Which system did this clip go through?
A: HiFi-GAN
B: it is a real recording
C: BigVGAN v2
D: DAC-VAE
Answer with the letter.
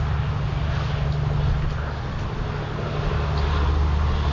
B